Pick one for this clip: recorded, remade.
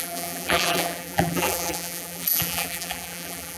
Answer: remade